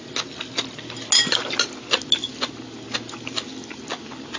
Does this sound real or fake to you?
real